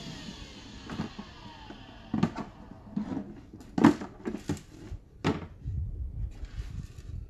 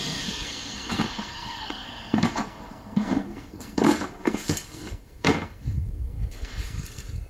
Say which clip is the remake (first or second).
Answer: second